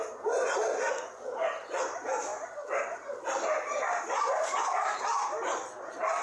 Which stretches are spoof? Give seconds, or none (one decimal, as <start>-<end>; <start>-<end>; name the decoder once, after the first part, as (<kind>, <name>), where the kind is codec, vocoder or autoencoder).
2.3-6.2 (vocoder, BigVGAN v2)